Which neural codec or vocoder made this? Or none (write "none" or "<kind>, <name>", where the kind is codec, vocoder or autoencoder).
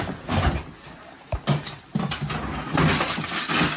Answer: none